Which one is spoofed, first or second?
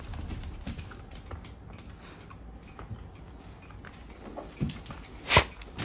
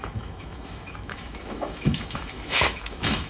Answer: second